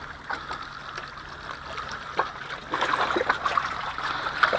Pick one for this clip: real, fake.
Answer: real